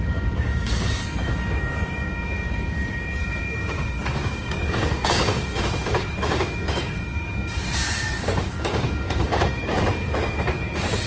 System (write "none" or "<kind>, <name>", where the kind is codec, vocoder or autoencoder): codec, DAC